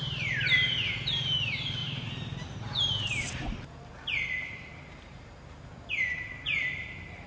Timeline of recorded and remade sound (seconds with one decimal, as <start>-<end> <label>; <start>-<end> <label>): 0.0-7.3 remade